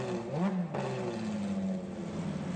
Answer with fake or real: real